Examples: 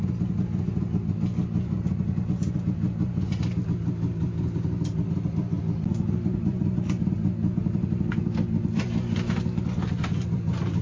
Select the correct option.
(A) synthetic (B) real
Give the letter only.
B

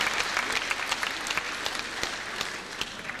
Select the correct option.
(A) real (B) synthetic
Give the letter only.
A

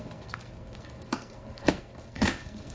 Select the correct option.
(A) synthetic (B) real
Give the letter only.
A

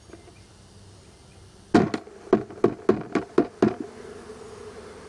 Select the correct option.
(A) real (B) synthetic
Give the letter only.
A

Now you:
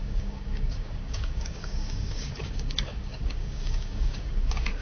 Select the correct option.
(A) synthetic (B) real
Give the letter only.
A